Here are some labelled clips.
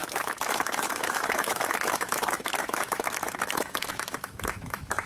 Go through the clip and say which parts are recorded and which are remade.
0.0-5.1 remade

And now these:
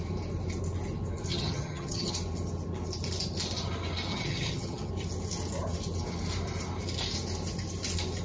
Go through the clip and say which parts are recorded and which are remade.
0.0-1.3 recorded; 1.3-2.1 remade; 2.1-4.1 recorded; 4.1-4.9 remade; 4.9-8.2 recorded

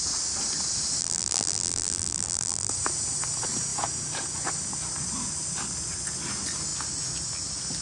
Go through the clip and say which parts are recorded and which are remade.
0.0-1.0 recorded; 1.0-2.7 remade; 2.7-7.8 recorded